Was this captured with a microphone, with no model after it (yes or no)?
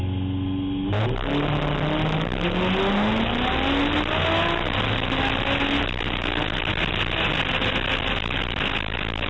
yes